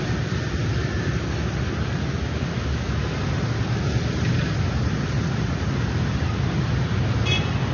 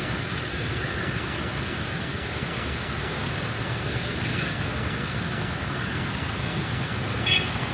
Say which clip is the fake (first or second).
second